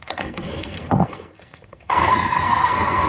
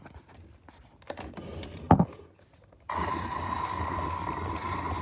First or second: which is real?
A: second